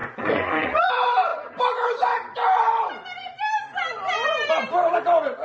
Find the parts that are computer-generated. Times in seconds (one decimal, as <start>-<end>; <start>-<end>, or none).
0.0-0.9